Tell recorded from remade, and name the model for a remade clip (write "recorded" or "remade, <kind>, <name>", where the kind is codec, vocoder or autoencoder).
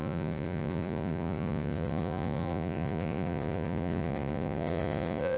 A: remade, vocoder, Vocos